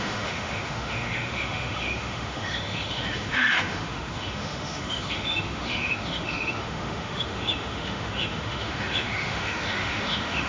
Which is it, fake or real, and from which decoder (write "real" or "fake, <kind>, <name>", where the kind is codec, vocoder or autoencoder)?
fake, autoencoder, DAC-VAE